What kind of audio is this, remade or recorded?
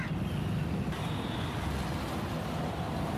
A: recorded